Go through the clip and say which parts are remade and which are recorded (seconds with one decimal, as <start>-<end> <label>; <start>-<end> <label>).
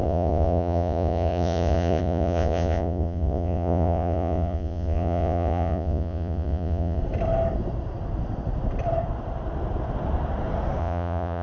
0.0-7.0 remade; 7.0-10.8 recorded; 10.8-11.4 remade